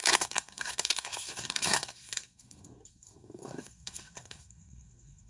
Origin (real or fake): fake